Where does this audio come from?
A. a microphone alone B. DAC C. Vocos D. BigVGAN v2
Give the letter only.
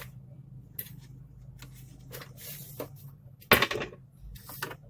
A